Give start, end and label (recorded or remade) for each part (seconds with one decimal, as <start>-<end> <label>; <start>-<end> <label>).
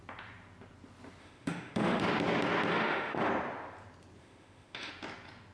0.0-1.2 recorded; 1.2-2.0 remade; 2.0-2.7 recorded; 2.7-3.3 remade; 3.3-4.2 recorded; 4.2-4.9 remade; 4.9-5.5 recorded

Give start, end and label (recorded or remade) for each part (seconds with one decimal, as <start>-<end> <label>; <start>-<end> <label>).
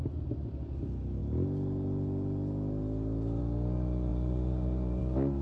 0.0-4.1 recorded; 4.1-5.0 remade; 5.0-5.4 recorded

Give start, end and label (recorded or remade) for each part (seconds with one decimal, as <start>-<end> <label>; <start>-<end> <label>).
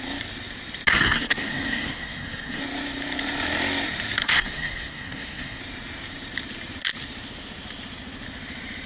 0.0-0.9 recorded; 0.9-2.6 remade; 2.6-4.2 recorded; 4.2-5.6 remade; 5.6-8.9 recorded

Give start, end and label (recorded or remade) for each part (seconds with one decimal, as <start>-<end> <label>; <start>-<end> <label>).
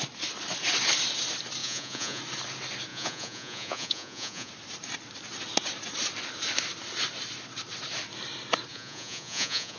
0.0-1.6 recorded; 1.6-2.2 remade; 2.2-2.9 recorded; 2.9-4.5 remade; 4.5-8.7 recorded; 8.7-9.8 remade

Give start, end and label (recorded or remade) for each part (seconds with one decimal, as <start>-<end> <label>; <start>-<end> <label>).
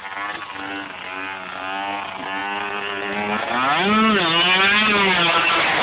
0.0-5.8 recorded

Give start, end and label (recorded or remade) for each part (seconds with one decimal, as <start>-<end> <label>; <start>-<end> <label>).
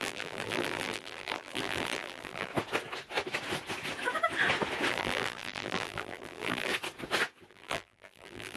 0.0-2.5 remade; 2.5-4.9 recorded; 4.9-6.7 remade; 6.7-7.5 recorded; 7.5-8.6 remade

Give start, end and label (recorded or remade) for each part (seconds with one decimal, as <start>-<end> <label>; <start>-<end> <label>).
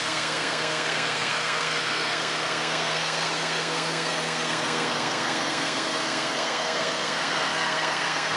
0.0-8.4 remade